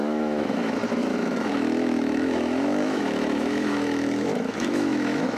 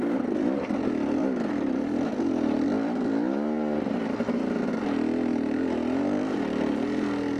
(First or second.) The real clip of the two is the second